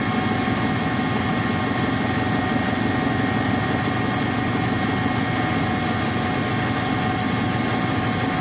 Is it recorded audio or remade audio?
recorded